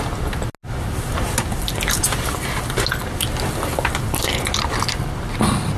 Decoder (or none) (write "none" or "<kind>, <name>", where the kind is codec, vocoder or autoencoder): none